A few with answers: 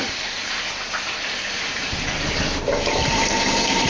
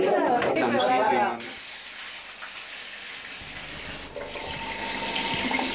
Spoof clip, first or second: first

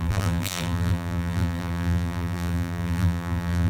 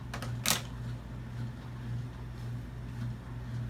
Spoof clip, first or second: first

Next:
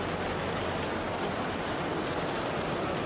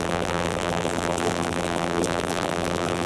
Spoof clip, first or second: second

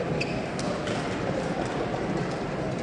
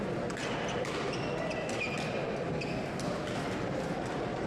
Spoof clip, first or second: first